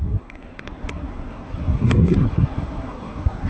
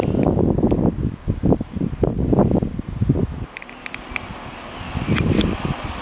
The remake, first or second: first